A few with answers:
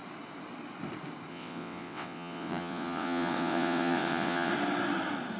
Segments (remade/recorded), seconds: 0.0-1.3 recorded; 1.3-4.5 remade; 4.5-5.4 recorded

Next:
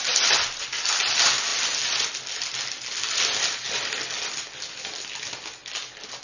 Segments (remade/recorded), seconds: 0.0-6.2 recorded

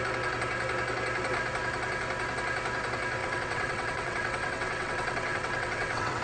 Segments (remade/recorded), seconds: 0.0-3.2 recorded; 3.2-6.2 remade

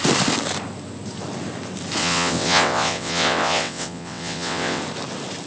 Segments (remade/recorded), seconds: 0.0-2.0 recorded; 2.0-4.8 remade; 4.8-5.5 recorded

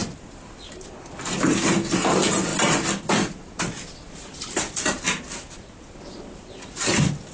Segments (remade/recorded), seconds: 0.0-7.3 recorded

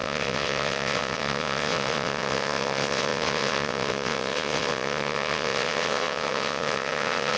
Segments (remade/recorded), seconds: 0.0-7.4 remade